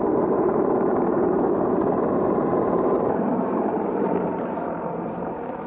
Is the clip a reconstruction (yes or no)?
yes